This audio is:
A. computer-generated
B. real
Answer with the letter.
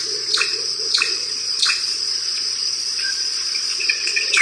A